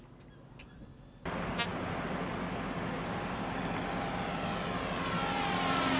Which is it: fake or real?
real